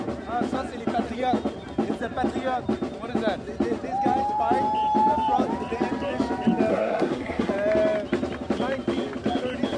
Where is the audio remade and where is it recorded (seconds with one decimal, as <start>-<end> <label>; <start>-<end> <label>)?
0.0-6.7 recorded; 6.7-7.5 remade; 7.5-9.8 recorded